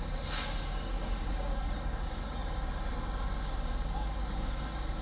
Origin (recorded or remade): remade